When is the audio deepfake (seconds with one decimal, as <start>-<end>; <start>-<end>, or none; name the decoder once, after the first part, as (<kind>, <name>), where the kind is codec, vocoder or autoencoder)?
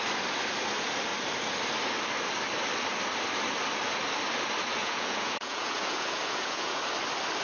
4.8-6.8 (vocoder, Vocos)